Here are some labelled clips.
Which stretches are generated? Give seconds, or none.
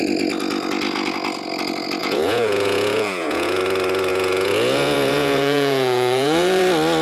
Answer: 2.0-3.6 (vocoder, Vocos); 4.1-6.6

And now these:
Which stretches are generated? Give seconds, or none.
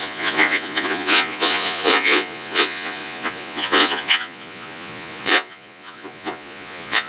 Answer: 0.0-7.1 (vocoder, Vocos)